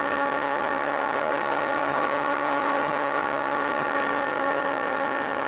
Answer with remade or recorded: remade